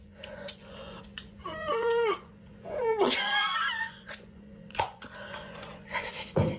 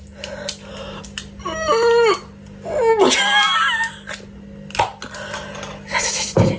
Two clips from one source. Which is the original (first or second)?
second